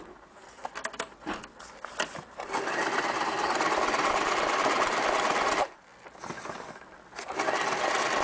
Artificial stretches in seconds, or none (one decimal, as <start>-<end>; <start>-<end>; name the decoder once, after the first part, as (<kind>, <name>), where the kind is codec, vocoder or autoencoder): none